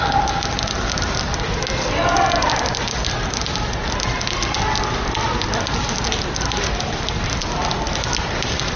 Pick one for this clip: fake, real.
real